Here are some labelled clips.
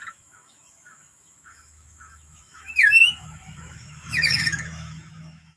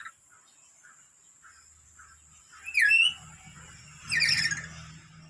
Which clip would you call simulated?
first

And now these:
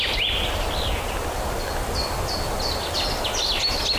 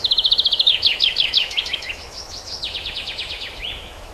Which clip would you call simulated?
second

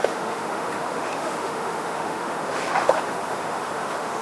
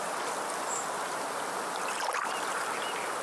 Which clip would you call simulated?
first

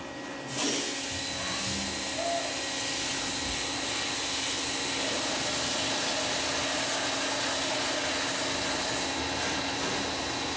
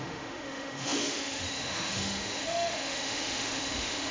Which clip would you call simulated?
second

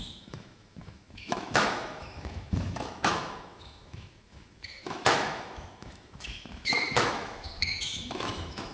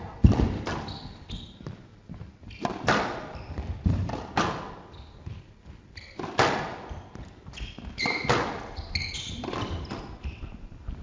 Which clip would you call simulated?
first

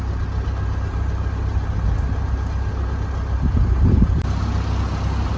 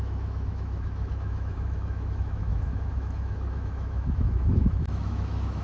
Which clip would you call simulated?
second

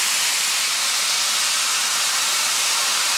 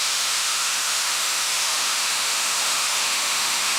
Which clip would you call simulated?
second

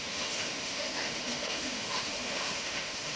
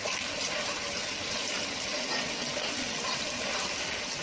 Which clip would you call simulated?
first